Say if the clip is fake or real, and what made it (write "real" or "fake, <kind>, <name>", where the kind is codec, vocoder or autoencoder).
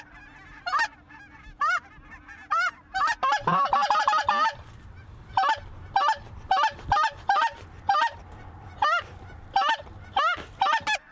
real